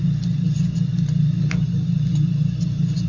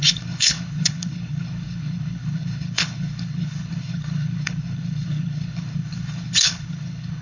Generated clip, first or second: second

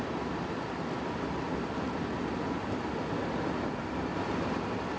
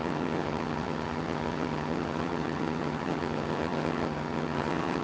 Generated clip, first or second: second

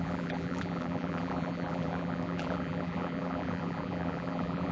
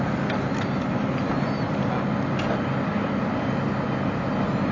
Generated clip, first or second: first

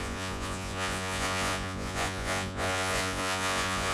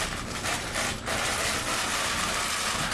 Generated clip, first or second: first